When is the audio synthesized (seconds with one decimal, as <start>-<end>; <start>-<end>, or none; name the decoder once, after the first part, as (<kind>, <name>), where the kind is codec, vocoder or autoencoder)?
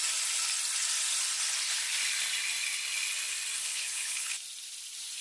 3.6-4.3 (codec, HILCodec)